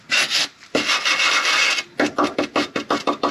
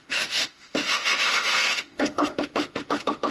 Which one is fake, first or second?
second